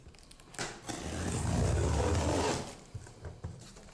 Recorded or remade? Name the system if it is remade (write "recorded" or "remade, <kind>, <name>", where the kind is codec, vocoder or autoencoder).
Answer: recorded